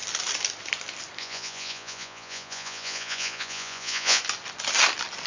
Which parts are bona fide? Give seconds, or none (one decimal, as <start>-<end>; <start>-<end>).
0.0-1.2; 4.2-5.3